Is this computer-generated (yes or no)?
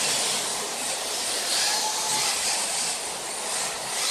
no